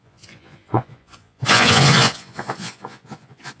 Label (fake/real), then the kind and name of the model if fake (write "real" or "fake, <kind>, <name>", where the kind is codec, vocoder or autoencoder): fake, vocoder, Vocos